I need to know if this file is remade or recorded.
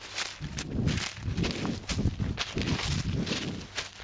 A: recorded